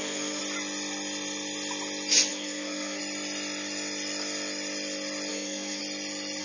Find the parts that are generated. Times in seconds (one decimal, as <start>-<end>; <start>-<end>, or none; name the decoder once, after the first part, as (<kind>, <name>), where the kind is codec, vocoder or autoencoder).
0.0-0.4 (codec, SNAC); 2.3-3.0; 5.3-5.8